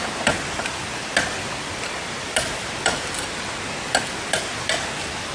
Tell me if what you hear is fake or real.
real